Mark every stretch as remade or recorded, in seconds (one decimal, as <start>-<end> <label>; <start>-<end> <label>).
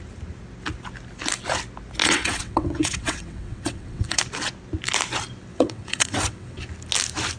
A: 0.0-2.0 recorded; 2.0-4.2 remade; 4.2-5.5 recorded; 5.5-6.6 remade; 6.6-7.4 recorded